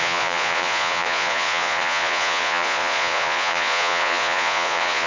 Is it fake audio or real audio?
fake